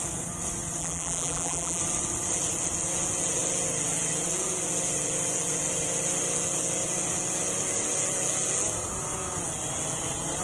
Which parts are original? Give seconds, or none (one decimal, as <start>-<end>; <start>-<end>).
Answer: 0.0-0.8; 1.8-10.4